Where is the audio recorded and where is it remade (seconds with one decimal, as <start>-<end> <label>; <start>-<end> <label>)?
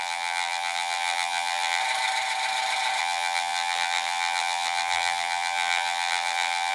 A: 0.0-1.8 remade; 1.8-3.0 recorded; 3.0-6.7 remade